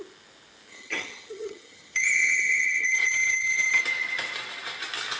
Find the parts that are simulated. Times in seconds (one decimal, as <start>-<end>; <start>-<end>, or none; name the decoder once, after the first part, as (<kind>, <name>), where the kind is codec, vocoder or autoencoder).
0.7-3.8 (vocoder, HiFi-GAN)